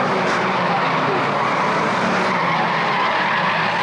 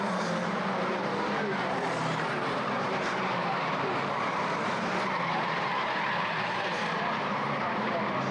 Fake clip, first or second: second